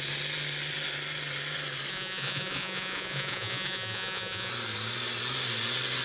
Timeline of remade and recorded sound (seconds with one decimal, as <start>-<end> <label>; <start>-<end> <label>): 0.0-1.9 recorded; 1.9-4.5 remade; 4.5-6.0 recorded